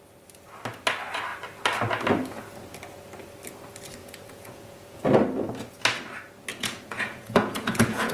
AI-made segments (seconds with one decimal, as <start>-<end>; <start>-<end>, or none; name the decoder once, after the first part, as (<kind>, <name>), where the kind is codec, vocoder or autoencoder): 4.0-5.0 (vocoder, Vocos); 6.5-8.1